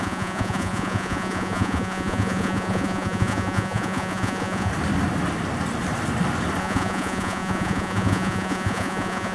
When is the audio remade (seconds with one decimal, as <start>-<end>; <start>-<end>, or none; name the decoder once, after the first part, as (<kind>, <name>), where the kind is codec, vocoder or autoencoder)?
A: 0.0-4.7 (vocoder, Vocos); 6.6-9.3